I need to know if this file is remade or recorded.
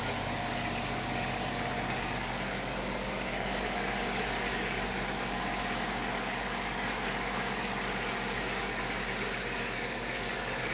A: remade